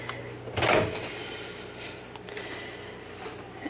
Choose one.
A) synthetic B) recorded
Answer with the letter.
B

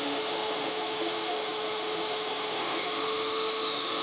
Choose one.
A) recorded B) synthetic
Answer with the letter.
B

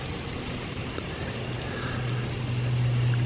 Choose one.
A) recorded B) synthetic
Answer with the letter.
A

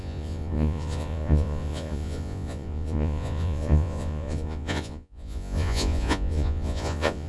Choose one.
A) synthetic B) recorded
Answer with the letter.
A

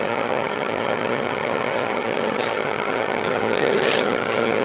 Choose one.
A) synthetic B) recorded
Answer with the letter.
A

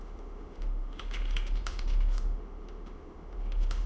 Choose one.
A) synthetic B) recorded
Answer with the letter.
A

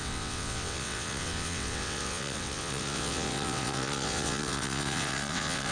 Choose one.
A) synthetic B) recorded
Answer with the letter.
A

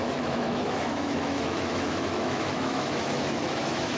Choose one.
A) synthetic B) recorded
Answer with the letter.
A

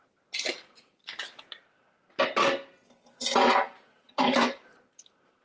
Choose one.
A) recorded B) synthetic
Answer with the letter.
A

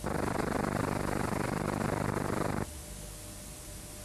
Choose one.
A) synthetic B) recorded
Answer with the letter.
B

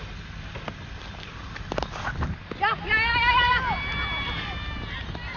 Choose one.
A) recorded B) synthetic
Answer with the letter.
A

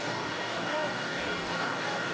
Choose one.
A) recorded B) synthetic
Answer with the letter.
B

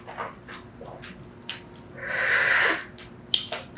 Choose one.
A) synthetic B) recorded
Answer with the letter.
B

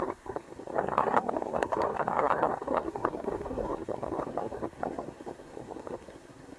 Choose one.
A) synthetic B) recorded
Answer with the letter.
A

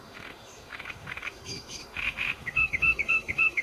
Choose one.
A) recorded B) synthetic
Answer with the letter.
B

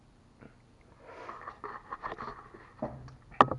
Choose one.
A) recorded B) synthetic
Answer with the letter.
A